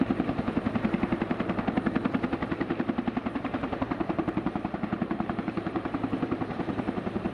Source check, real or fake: fake